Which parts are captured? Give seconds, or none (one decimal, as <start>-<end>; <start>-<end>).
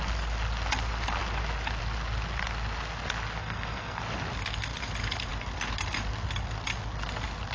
0.0-3.4; 4.0-7.5